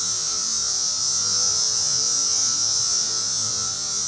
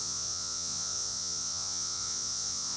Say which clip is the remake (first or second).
second